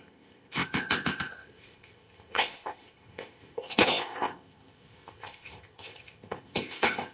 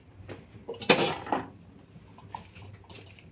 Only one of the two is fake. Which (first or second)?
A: first